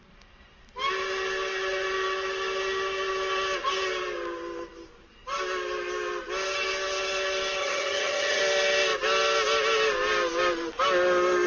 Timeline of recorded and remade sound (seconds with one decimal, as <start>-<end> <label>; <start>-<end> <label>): 0.0-7.6 recorded; 7.6-8.4 remade; 8.4-11.5 recorded